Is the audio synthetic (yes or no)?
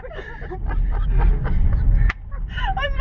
no